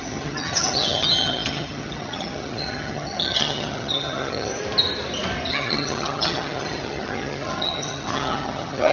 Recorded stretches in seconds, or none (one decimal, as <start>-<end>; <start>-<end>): 4.5-5.5